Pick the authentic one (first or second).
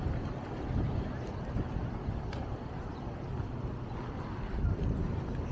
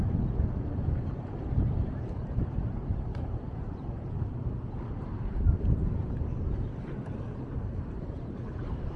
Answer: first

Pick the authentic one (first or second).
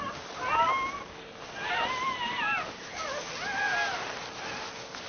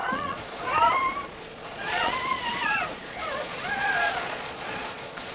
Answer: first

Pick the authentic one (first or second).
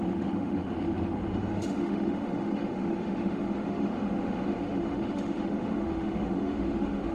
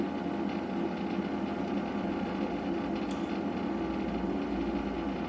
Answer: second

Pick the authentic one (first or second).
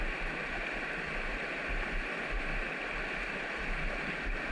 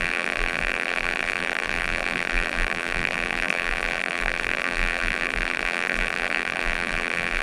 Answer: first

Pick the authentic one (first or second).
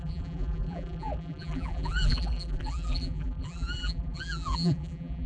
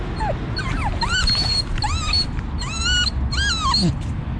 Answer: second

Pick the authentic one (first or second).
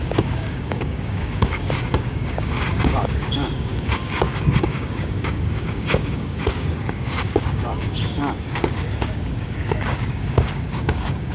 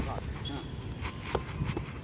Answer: second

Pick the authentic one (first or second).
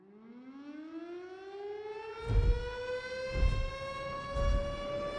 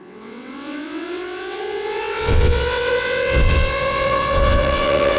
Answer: first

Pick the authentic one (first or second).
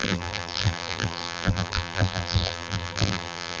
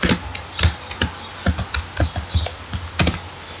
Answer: second